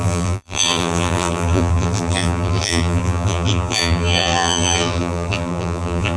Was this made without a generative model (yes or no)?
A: no